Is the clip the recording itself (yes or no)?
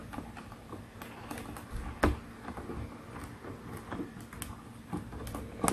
yes